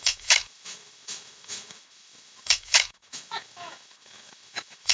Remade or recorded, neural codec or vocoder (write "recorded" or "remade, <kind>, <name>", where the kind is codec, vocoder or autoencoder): remade, autoencoder, DAC-VAE